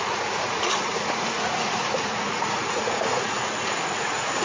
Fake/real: fake